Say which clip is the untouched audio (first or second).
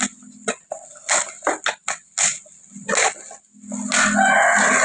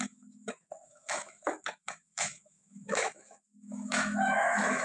first